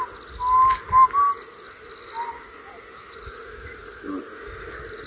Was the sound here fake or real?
real